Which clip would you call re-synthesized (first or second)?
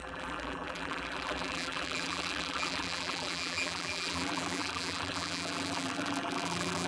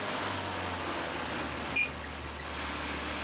first